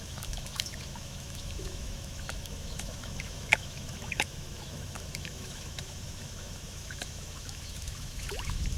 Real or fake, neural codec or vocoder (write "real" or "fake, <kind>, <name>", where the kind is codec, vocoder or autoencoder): fake, autoencoder, DAC-VAE